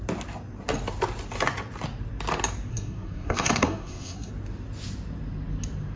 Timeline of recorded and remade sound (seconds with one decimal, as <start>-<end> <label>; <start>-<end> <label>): 0.0-2.7 recorded; 2.7-4.3 remade; 4.3-6.0 recorded